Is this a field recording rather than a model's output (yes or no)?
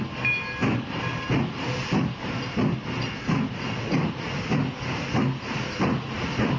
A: yes